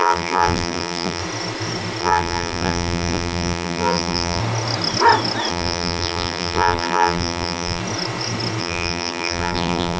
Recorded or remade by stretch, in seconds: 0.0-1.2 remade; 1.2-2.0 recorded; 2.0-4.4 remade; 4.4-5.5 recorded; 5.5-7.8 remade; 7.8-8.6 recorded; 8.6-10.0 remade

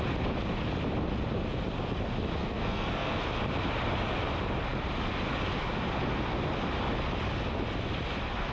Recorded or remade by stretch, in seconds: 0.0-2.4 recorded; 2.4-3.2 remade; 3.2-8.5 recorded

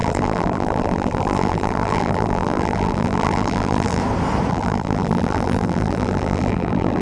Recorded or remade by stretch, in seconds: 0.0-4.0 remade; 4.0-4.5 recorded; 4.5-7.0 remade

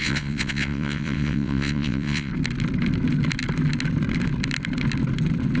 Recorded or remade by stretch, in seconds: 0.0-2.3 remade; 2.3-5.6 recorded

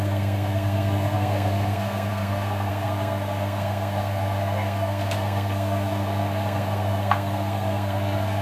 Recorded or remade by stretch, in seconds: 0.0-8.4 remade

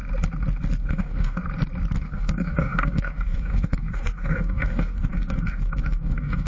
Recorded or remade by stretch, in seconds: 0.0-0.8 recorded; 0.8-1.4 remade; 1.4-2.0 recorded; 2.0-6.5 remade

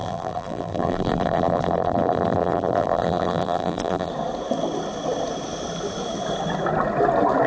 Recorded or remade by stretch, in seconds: 0.0-4.1 remade; 4.1-7.5 recorded

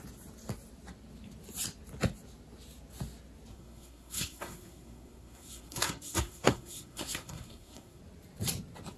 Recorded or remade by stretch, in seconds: 0.0-3.5 recorded; 3.5-8.0 remade; 8.0-9.0 recorded